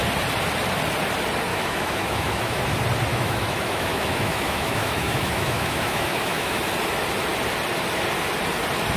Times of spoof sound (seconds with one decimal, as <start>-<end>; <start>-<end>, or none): 1.5-2.6; 3.1-6.6